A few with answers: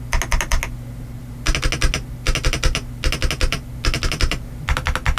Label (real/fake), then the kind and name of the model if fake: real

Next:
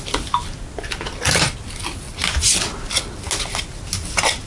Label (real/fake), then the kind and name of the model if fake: real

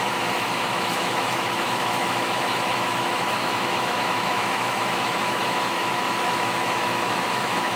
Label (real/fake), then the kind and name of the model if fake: fake, autoencoder, DAC-VAE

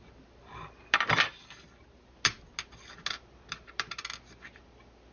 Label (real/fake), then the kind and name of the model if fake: real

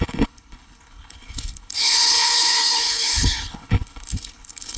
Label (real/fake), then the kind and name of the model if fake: fake, codec, HILCodec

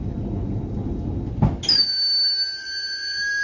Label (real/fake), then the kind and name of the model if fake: real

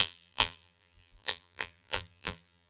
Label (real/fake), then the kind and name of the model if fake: fake, vocoder, BigVGAN v2